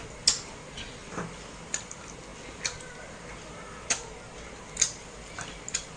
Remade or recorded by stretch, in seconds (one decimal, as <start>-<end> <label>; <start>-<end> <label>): 0.0-1.0 recorded; 1.0-1.6 remade; 1.6-6.0 recorded